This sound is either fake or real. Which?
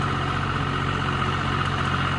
real